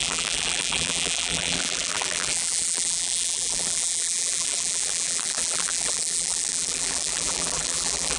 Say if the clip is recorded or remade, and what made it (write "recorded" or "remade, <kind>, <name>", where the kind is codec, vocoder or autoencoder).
remade, vocoder, BigVGAN v2